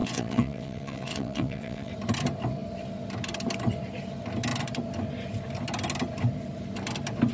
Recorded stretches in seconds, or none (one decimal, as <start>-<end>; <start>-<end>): 1.9-7.3